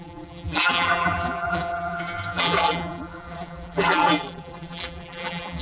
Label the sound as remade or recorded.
remade